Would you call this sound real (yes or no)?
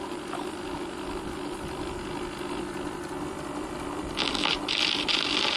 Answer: yes